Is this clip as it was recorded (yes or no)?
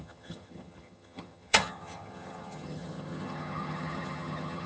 no